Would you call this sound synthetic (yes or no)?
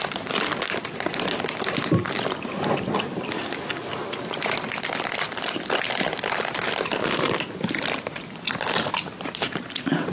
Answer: yes